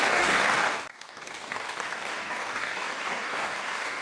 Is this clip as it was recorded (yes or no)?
no